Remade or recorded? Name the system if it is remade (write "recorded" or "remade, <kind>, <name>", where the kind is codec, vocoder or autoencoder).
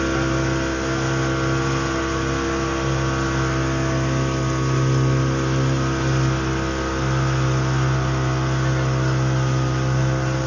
recorded